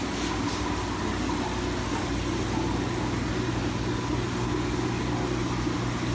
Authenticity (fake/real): real